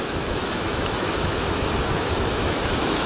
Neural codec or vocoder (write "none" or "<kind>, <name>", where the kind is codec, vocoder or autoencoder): autoencoder, DAC-VAE